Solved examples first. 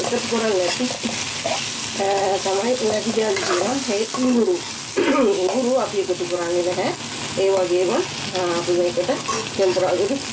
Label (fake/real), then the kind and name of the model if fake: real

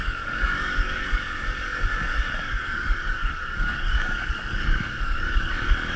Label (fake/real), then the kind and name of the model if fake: fake, codec, DAC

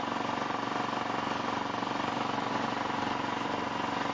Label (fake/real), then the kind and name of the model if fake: real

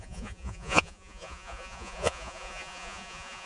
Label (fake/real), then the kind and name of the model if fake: fake, vocoder, Vocos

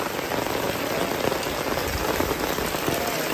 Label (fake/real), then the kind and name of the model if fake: real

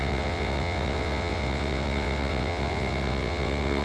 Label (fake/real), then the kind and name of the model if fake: fake, vocoder, WaveNeXt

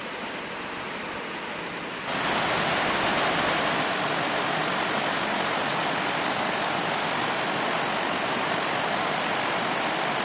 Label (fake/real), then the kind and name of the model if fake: real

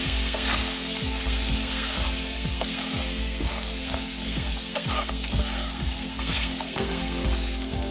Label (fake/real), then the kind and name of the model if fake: fake, codec, SNAC